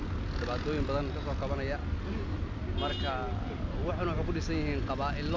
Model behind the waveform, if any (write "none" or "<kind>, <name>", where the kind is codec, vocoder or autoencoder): none